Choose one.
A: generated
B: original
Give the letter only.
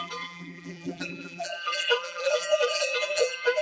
A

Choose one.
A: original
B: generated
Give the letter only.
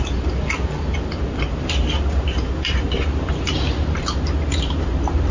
A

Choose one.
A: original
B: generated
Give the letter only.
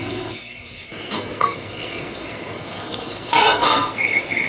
B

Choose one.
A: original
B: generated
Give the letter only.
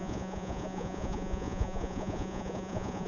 B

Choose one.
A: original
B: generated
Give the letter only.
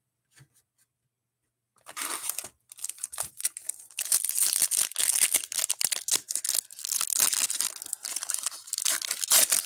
A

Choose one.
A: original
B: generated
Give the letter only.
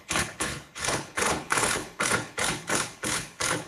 B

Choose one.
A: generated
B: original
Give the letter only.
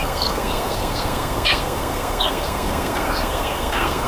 A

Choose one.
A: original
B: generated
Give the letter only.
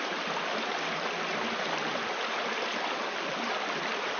A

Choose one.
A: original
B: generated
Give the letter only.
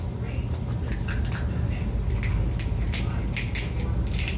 A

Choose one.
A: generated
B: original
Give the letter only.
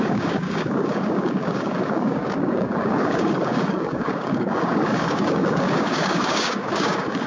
A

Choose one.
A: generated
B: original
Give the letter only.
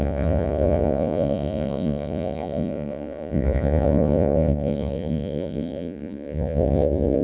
A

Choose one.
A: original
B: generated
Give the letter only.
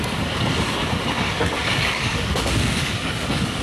B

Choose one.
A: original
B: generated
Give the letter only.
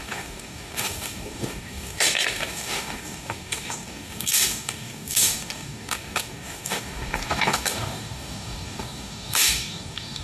B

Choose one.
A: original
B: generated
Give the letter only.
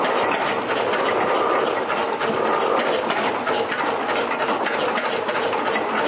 A